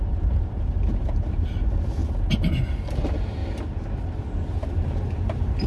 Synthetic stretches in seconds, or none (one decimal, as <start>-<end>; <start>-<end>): 0.0-2.0; 2.6-3.4; 4.7-5.7